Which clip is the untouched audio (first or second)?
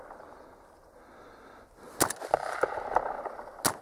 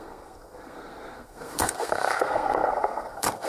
first